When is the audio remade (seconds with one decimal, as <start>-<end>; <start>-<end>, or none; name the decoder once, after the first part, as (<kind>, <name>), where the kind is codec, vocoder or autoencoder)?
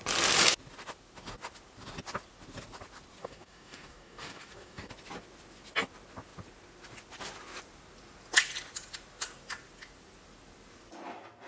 3.2-4.9 (codec, DAC)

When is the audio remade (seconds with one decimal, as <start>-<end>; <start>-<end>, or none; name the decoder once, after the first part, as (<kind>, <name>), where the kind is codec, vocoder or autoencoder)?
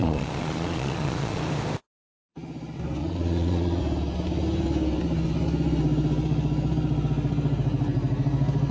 0.0-1.4 (vocoder, Vocos); 3.0-3.8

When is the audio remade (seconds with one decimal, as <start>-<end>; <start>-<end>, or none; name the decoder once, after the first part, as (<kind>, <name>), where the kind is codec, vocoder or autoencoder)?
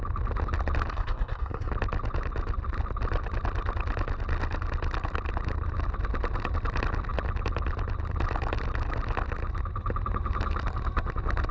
0.9-1.7 (codec, SNAC)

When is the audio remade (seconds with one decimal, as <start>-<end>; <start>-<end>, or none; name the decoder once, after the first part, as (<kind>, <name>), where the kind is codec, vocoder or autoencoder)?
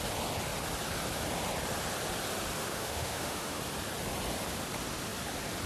2.6-3.6 (autoencoder, DAC-VAE)